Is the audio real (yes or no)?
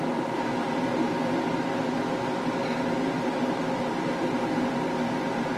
yes